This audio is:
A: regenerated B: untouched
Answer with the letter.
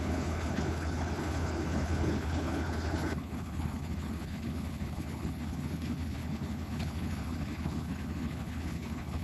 A